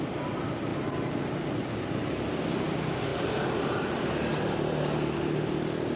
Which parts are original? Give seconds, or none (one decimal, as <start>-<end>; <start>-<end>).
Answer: 0.0-0.7; 1.4-3.1; 3.9-6.0